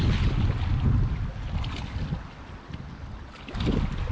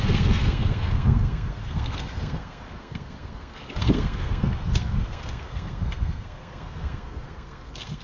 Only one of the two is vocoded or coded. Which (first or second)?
second